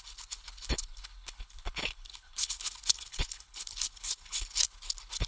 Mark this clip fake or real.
fake